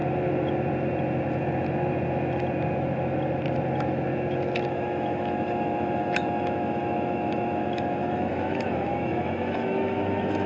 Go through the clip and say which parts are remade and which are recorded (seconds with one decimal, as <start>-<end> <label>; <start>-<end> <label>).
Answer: 0.0-4.7 recorded; 4.7-10.5 remade